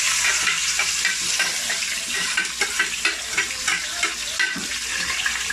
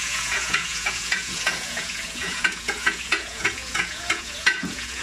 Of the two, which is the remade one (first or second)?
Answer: second